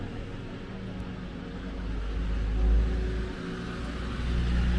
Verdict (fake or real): real